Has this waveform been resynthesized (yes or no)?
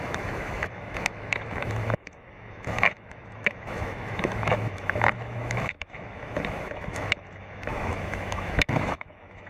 yes